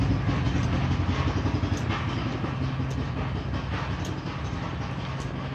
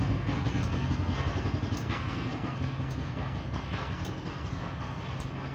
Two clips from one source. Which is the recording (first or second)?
first